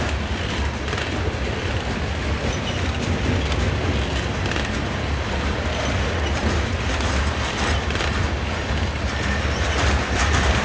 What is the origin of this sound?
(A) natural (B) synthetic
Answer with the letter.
A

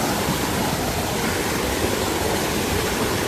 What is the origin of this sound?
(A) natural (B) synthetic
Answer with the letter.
A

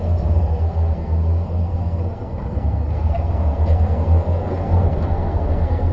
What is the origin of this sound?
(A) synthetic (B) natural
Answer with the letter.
A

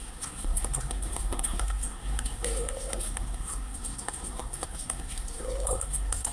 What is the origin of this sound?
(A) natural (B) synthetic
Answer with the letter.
B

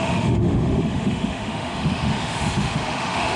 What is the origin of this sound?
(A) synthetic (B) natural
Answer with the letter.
A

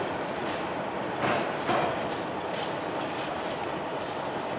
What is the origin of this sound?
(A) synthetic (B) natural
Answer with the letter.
B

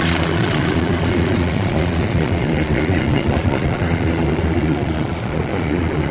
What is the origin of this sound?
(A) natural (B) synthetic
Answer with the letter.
B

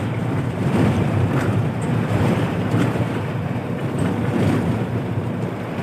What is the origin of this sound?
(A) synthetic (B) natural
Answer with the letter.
A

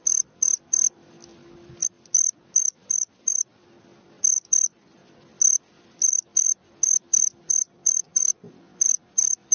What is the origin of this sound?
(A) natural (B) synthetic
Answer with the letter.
A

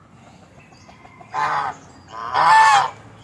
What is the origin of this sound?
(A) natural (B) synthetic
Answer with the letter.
A